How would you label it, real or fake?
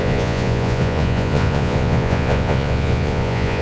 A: fake